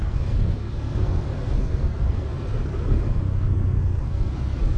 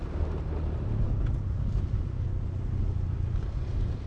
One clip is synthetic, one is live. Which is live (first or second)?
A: second